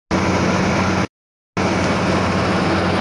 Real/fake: real